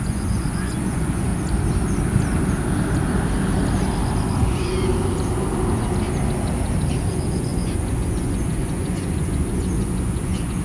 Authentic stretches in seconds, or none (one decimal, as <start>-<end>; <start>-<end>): 1.3-4.4; 4.9-7.1